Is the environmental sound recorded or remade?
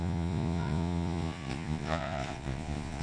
remade